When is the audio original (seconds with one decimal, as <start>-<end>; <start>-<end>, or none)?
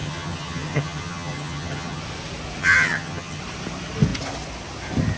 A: 2.0-2.6; 3.4-5.2